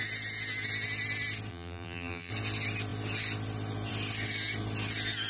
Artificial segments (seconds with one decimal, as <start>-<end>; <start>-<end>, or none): 1.5-2.3